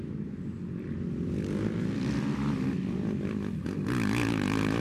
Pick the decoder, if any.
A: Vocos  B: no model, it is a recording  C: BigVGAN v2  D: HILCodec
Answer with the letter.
B